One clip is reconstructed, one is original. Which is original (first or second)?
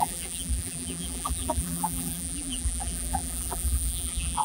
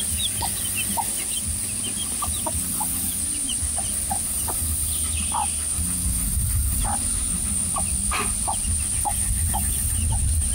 second